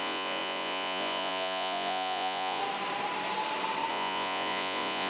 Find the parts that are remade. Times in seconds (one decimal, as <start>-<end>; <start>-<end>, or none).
0.0-2.6; 3.9-5.1